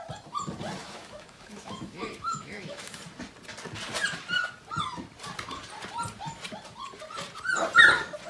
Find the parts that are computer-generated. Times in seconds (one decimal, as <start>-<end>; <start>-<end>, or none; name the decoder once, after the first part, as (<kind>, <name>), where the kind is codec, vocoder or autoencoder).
0.8-3.0 (autoencoder, DAC-VAE)